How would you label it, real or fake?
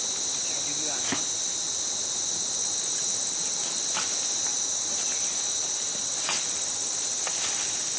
real